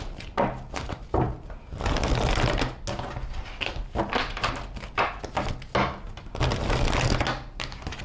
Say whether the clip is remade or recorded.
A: recorded